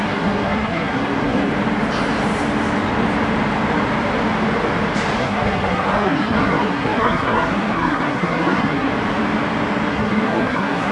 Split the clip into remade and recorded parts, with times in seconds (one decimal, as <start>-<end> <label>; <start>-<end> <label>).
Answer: 0.0-1.5 remade; 1.5-5.2 recorded; 5.2-8.9 remade; 8.9-9.9 recorded; 9.9-10.9 remade

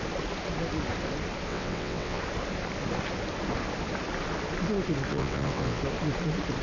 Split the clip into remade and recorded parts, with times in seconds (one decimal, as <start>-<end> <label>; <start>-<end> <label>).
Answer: 0.0-1.5 recorded; 1.5-2.2 remade; 2.2-5.1 recorded; 5.1-5.8 remade; 5.8-6.6 recorded

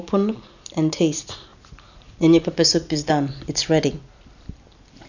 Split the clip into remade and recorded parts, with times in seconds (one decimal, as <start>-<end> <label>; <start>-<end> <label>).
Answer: 0.0-1.5 recorded; 1.5-3.1 remade; 3.1-5.1 recorded

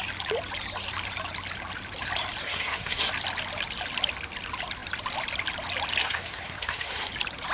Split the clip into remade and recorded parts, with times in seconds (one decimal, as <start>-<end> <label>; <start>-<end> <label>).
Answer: 0.0-2.4 recorded; 2.4-3.1 remade; 3.1-6.0 recorded; 6.0-7.1 remade; 7.1-7.5 recorded

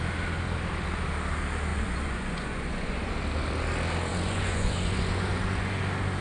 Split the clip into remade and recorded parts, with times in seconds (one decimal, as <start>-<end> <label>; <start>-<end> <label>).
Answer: 0.0-1.7 recorded; 1.7-3.1 remade; 3.1-4.1 recorded; 4.1-5.8 remade; 5.8-6.2 recorded

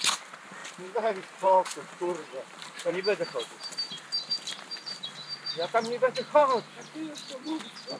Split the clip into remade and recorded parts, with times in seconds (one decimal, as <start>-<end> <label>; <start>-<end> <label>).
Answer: 0.0-0.6 recorded; 0.6-3.9 remade; 3.9-8.0 recorded

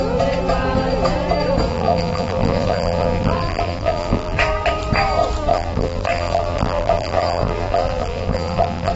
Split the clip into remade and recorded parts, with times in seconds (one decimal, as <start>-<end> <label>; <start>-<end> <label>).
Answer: 0.0-1.7 recorded; 1.7-4.4 remade; 4.4-5.5 recorded; 5.5-8.9 remade